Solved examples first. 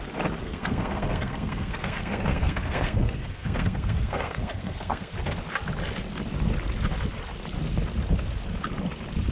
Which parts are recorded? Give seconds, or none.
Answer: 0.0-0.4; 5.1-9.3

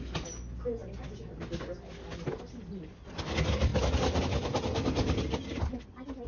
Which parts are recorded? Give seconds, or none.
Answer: 0.0-6.3

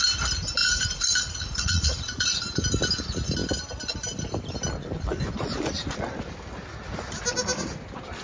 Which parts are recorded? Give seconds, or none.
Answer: 0.0-0.6; 2.4-8.2

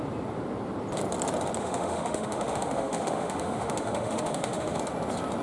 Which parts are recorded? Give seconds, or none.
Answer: 0.0-1.6; 4.8-5.4

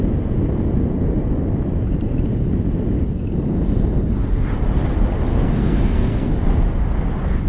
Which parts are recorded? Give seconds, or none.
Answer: 0.0-5.3; 6.3-7.5